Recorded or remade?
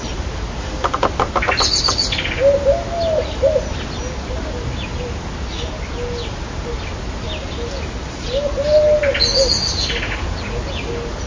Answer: recorded